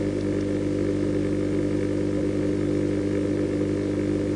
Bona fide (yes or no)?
yes